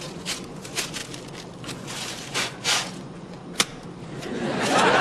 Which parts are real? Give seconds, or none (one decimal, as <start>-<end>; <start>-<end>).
1.0-1.6; 3.4-4.0